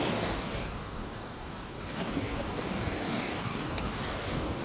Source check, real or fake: fake